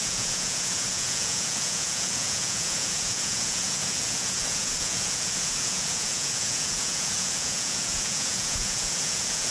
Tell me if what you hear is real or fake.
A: fake